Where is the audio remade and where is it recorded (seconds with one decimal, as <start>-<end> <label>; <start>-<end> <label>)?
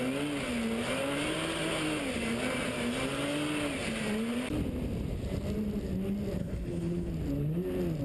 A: 0.0-6.4 recorded; 6.4-7.1 remade; 7.1-8.0 recorded